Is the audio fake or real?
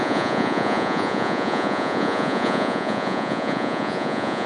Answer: fake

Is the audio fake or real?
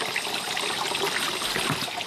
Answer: real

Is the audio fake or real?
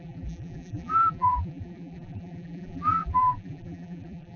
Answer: fake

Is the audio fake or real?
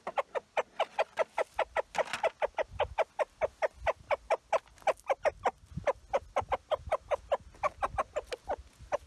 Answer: real